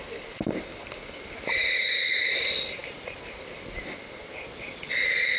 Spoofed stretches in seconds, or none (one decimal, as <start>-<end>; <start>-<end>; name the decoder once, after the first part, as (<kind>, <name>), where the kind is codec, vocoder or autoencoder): none

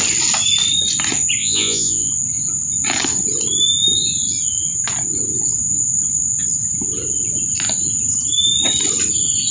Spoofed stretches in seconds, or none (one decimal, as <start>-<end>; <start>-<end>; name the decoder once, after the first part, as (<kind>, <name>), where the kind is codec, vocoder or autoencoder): 1.4-2.1 (vocoder, Vocos)

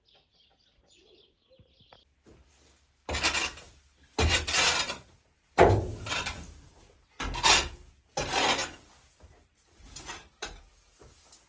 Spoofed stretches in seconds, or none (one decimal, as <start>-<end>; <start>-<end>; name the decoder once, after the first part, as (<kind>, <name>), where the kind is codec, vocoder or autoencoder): none

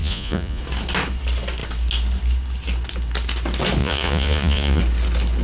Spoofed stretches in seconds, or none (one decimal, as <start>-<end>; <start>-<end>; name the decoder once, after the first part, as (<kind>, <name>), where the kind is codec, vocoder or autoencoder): 0.0-0.6 (vocoder, Vocos); 3.8-4.8

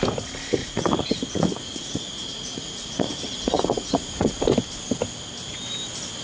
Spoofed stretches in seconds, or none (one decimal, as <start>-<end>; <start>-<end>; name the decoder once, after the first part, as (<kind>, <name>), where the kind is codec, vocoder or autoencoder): 0.6-4.3 (vocoder, Vocos)

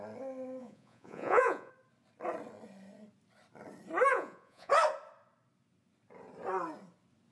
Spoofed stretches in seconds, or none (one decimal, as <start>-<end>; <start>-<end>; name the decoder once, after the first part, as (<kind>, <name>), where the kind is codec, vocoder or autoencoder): 0.6-1.7 (vocoder, Vocos); 4.1-4.7

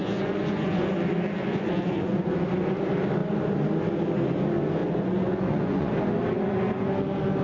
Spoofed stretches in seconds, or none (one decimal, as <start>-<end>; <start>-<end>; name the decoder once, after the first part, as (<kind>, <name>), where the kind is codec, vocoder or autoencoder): 0.0-0.9 (vocoder, Vocos); 1.4-2.3; 4.8-5.9